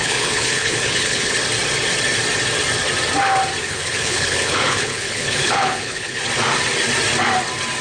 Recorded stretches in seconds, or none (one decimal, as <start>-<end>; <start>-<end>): 1.3-3.6; 6.2-7.8